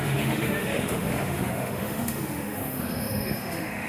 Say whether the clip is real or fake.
fake